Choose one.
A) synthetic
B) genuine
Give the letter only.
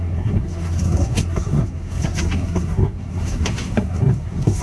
A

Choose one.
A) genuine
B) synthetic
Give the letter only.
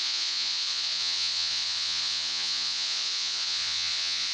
B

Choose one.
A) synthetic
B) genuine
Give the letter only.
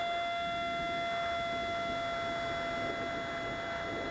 B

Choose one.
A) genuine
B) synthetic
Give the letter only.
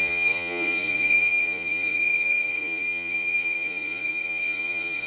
B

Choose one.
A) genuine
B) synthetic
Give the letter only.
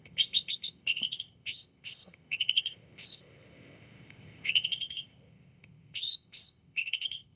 B